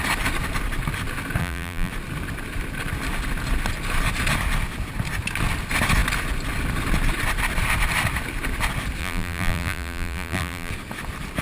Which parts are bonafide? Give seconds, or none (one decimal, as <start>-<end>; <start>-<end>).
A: 0.0-1.4; 1.9-9.0; 10.7-11.4

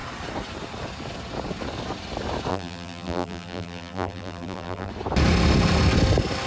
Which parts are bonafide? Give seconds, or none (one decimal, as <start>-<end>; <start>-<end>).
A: 0.0-2.5; 4.9-6.5

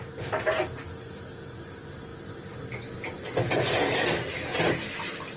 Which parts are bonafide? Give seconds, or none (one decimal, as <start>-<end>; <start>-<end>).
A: 0.0-5.4

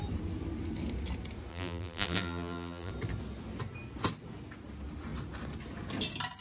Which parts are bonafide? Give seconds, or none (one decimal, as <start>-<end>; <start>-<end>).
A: 0.0-1.5; 2.9-6.4

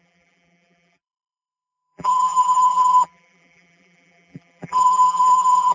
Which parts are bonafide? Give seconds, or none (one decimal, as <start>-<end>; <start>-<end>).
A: none

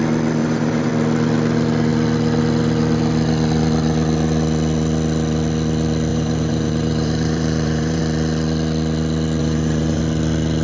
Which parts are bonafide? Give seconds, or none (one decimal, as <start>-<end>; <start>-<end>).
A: 0.0-0.4; 0.9-6.1; 8.0-9.4; 10.0-10.6

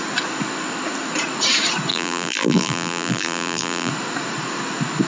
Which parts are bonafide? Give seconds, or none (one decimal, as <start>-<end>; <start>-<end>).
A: 0.0-1.9; 3.9-5.1